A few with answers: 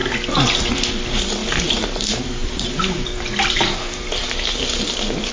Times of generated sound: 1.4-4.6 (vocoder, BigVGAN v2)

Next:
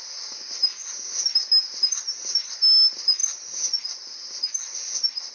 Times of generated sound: none